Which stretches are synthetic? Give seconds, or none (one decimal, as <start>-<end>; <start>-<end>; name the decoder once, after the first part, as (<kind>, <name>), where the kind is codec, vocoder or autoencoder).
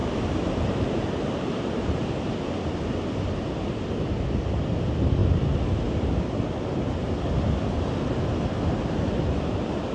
0.0-2.6 (vocoder, BigVGAN v2)